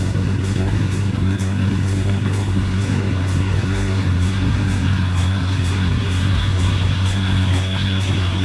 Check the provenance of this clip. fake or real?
fake